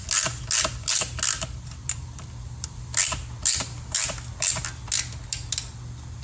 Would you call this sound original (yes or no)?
yes